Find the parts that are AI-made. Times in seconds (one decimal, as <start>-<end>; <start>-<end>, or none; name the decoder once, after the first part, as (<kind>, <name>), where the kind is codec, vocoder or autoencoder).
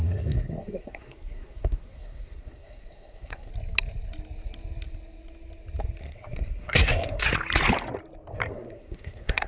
0.0-3.5 (codec, SNAC); 6.0-7.3; 8.5-9.5